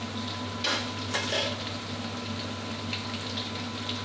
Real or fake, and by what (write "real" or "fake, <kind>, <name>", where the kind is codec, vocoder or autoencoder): real